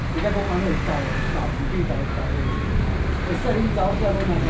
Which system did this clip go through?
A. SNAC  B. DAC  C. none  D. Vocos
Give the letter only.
C